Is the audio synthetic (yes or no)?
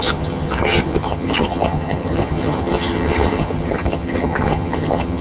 yes